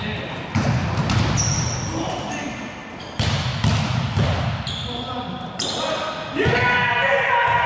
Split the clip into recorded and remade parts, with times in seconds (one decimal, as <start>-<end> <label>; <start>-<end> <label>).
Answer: 0.0-7.7 recorded